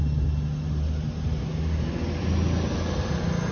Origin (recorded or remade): recorded